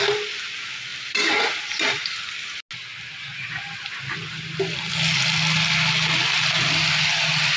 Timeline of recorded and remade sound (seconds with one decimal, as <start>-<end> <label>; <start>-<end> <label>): 0.0-7.6 recorded